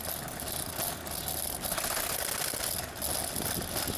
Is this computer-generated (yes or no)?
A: no